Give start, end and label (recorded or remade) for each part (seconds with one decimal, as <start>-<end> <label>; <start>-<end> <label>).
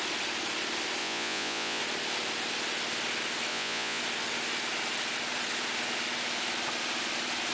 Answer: 0.0-1.0 recorded; 1.0-1.8 remade; 1.8-3.5 recorded; 3.5-4.0 remade; 4.0-7.5 recorded